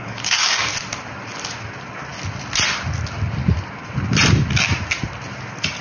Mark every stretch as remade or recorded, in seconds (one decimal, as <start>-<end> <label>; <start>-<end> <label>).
0.0-0.7 remade; 0.7-5.8 recorded